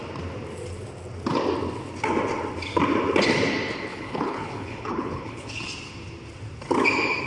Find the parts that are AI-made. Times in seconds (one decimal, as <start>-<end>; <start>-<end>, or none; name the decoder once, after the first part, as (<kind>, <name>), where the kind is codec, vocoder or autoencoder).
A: 3.9-5.6 (codec, HILCodec)